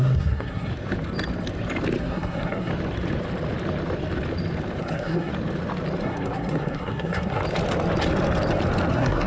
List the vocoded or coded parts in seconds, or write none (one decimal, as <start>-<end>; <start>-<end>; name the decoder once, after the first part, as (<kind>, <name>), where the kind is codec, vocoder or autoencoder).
0.0-0.7 (codec, SNAC); 2.0-2.7; 4.8-5.3; 6.0-7.4; 8.9-9.3

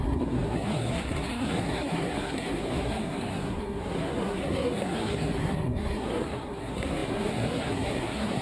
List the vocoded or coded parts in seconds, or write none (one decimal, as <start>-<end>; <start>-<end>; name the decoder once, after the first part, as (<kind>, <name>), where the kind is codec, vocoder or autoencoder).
0.0-8.4 (codec, SNAC)